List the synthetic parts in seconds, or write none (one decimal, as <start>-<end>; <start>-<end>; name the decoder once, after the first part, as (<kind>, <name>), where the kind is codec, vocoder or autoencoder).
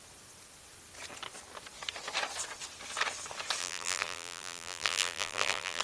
3.6-5.8 (vocoder, BigVGAN v2)